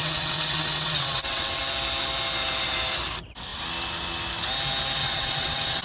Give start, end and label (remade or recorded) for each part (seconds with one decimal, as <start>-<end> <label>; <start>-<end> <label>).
0.0-1.6 remade; 1.6-5.0 recorded; 5.0-5.8 remade